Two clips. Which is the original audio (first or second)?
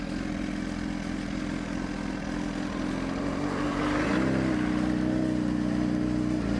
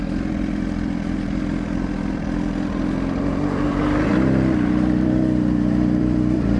first